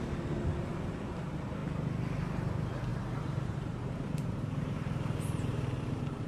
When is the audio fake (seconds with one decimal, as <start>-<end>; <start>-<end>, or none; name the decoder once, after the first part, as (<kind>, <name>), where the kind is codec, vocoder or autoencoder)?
2.9-6.3 (vocoder, BigVGAN v2)